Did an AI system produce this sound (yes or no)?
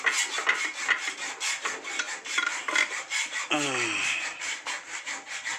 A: no